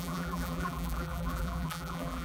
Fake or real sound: fake